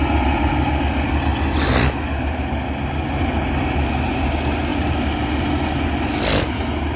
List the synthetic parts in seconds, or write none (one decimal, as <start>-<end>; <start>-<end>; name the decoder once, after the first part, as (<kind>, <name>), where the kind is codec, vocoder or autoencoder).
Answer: none

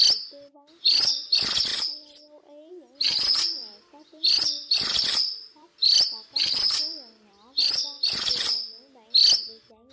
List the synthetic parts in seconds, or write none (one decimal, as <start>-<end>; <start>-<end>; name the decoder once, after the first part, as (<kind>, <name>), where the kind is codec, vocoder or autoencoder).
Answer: 3.6-7.6 (vocoder, BigVGAN v2)

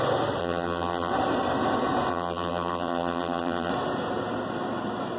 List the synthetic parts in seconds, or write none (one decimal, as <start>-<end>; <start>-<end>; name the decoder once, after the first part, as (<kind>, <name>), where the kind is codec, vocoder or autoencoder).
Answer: 0.4-1.1 (vocoder, BigVGAN v2); 2.1-3.7